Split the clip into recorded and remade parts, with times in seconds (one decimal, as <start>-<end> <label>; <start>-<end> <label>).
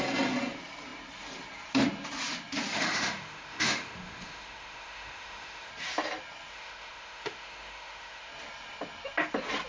0.0-2.7 recorded; 2.7-5.7 remade; 5.7-6.5 recorded; 6.5-8.3 remade; 8.3-9.7 recorded